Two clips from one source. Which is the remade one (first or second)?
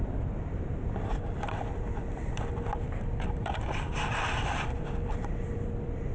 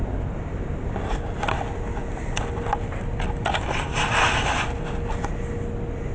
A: first